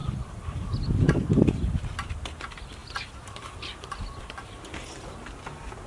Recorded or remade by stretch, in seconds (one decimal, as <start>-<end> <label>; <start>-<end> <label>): 0.0-5.9 recorded